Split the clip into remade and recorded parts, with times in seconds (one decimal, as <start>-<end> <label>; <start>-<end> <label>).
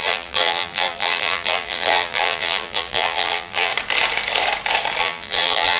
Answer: 0.0-3.7 remade; 3.7-5.0 recorded; 5.0-5.8 remade